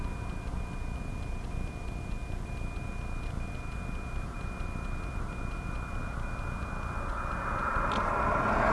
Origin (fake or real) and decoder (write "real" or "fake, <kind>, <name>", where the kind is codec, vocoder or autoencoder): real